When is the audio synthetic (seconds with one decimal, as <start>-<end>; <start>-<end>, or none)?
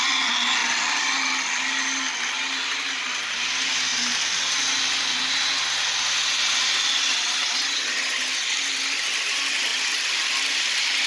none